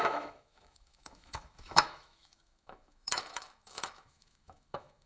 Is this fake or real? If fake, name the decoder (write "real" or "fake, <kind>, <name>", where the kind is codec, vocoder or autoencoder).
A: fake, autoencoder, DAC-VAE